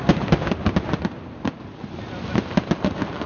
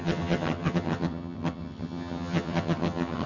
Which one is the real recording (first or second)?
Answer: first